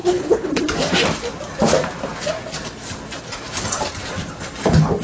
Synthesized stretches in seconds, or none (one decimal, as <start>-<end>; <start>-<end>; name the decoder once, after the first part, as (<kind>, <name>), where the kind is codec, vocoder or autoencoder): 0.0-0.6 (codec, HILCodec)